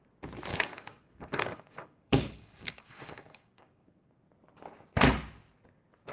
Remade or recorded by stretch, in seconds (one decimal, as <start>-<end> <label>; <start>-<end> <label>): 0.0-0.5 recorded; 0.5-4.2 remade; 4.2-6.1 recorded